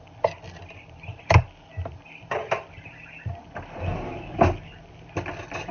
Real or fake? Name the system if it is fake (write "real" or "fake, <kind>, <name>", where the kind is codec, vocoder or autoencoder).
real